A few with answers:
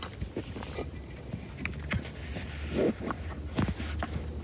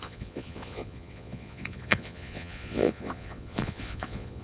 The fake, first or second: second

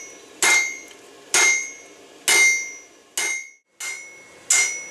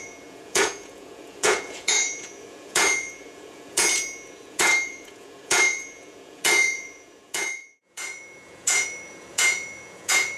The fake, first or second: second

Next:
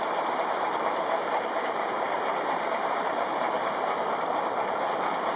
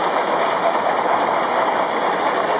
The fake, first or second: first